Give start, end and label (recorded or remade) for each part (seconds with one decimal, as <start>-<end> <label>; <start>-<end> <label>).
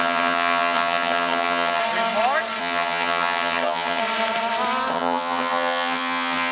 0.0-1.8 remade; 1.8-2.6 recorded; 2.6-4.0 remade; 4.0-4.9 recorded; 4.9-6.5 remade